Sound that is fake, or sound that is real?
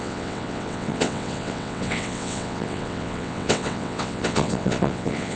fake